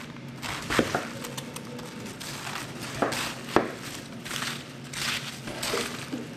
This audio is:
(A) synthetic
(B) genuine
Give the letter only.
B